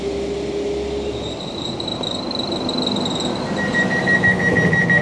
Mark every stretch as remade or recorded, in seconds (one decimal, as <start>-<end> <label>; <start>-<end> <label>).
0.0-5.0 recorded

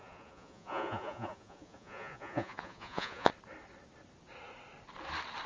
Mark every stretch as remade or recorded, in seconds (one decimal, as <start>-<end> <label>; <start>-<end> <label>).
0.0-3.3 remade; 3.3-5.5 recorded

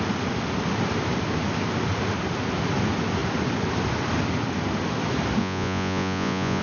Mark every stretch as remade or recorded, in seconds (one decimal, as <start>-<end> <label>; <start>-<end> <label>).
0.0-5.4 recorded; 5.4-6.6 remade

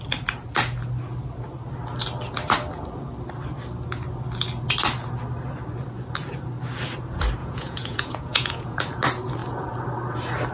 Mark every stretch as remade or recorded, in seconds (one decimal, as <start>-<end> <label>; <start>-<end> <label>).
0.0-7.4 recorded; 7.4-8.8 remade; 8.8-10.5 recorded

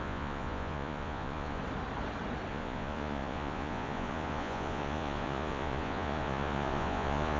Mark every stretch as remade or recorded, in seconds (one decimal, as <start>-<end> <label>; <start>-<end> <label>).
0.0-1.6 remade; 1.6-2.5 recorded; 2.5-7.4 remade

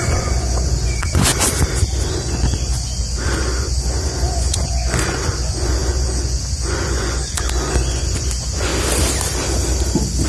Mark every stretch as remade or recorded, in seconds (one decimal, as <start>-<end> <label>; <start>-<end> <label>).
0.0-1.3 remade; 1.3-2.1 recorded; 2.1-8.7 remade; 8.7-10.3 recorded